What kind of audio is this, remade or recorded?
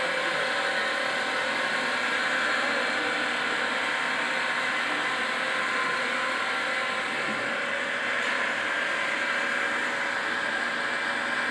recorded